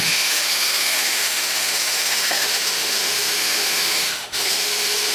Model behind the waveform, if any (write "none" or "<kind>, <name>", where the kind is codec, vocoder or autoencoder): autoencoder, DAC-VAE